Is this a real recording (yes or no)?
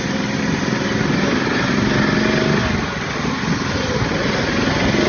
yes